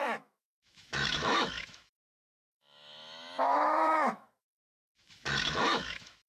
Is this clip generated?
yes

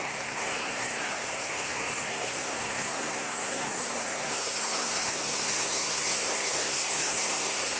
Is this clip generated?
yes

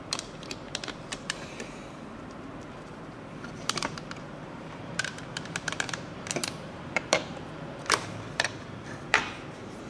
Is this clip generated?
yes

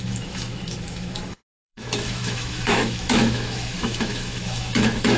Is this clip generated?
yes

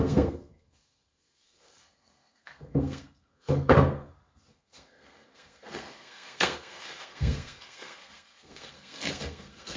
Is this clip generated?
yes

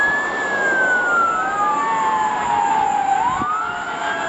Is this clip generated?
no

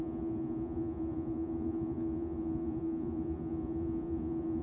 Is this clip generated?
yes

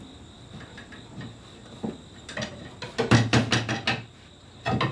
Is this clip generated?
no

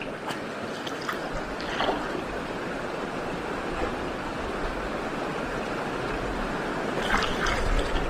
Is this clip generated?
no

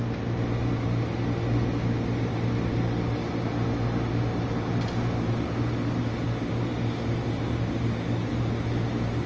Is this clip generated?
no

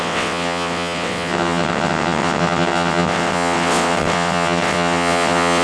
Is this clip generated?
yes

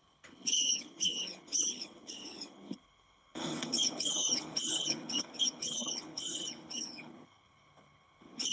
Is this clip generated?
yes